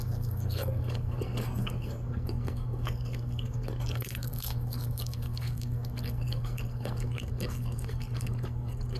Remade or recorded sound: remade